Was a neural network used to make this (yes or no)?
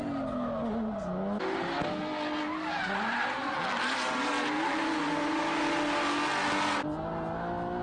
no